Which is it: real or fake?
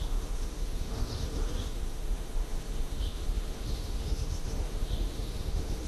fake